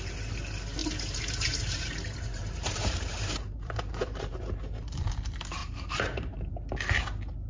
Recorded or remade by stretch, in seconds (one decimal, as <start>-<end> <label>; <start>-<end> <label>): 0.0-0.8 recorded; 0.8-5.0 remade; 5.0-5.6 recorded; 5.6-6.5 remade; 6.5-7.5 recorded